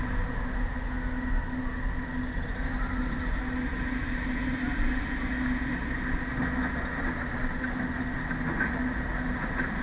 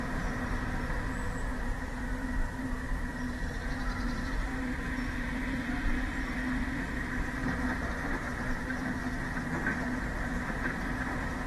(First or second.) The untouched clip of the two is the first